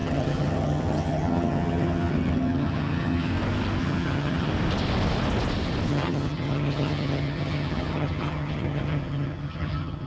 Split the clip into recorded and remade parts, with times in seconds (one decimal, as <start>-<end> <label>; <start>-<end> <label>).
0.0-3.3 remade; 3.3-3.8 recorded; 3.8-4.5 remade; 4.5-5.9 recorded; 5.9-10.1 remade